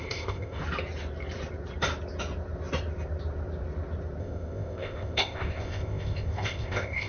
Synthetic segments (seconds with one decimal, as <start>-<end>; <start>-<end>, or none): 0.0-0.6; 4.2-7.1